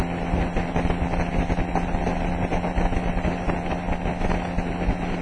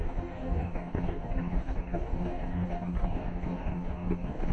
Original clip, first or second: first